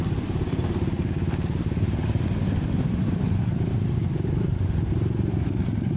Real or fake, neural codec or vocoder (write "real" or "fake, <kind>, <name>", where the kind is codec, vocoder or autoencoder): fake, vocoder, BigVGAN v2